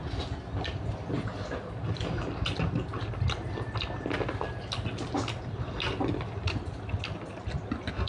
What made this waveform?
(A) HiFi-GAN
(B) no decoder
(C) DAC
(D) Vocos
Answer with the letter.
B